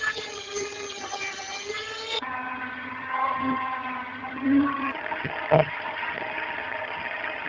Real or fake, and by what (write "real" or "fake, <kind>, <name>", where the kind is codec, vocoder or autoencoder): fake, vocoder, HiFi-GAN